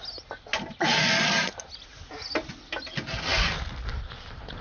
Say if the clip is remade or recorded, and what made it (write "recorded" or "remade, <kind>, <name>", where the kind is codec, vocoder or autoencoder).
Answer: recorded